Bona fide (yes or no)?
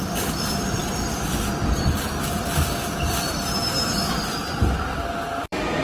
no